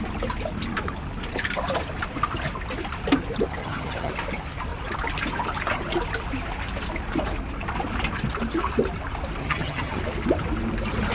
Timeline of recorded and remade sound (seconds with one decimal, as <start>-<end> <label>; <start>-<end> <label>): 0.0-3.6 recorded; 3.6-4.1 remade; 4.1-9.4 recorded; 9.4-10.0 remade; 10.0-11.1 recorded